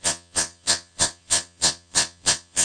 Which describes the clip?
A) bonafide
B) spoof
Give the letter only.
B